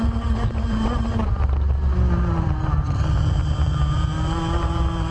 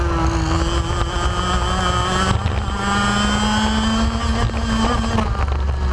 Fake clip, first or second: first